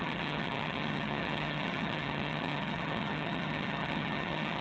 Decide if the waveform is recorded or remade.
remade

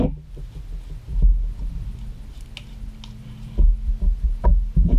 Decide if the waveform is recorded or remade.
recorded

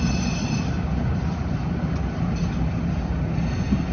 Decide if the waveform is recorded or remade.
recorded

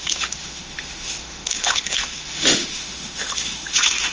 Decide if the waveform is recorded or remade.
remade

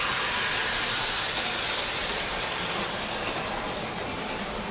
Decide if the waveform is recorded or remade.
recorded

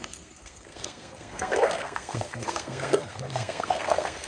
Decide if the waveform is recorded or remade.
remade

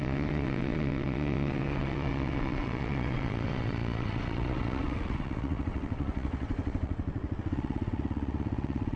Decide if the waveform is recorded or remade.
remade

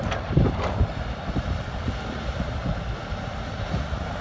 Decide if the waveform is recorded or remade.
remade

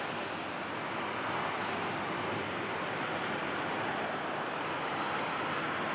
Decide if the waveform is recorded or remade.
recorded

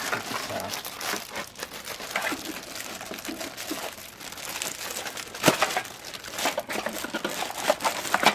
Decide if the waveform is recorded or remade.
recorded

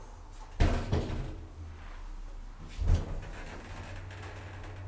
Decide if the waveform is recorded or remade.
recorded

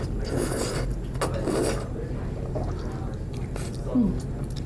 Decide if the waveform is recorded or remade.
recorded